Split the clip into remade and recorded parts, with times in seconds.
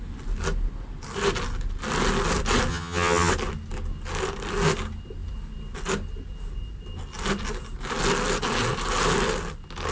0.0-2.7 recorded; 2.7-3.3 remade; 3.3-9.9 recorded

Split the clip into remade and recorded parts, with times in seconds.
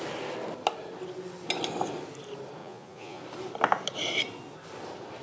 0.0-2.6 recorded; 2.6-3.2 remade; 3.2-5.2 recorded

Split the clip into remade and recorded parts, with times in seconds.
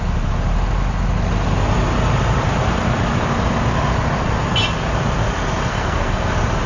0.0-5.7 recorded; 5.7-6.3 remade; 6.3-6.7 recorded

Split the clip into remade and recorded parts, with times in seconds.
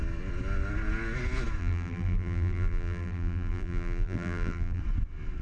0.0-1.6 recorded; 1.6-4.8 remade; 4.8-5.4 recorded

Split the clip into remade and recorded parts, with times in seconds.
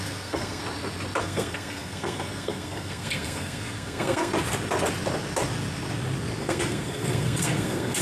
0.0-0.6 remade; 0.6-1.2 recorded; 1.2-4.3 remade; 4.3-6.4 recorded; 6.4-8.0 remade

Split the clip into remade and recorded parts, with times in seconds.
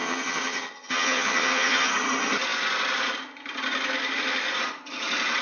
0.0-1.9 remade; 1.9-5.4 recorded